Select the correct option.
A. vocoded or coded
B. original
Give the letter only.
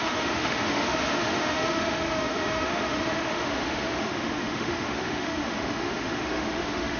A